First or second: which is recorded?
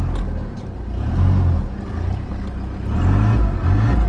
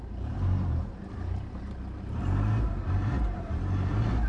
first